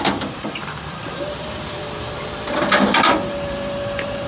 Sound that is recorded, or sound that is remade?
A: remade